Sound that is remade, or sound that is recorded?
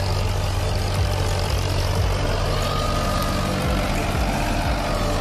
recorded